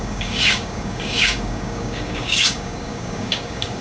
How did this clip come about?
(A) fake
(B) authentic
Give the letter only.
A